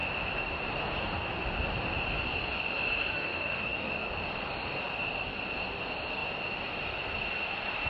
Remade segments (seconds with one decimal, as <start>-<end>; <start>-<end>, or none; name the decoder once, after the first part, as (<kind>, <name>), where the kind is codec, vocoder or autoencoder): 3.1-3.9 (autoencoder, DAC-VAE)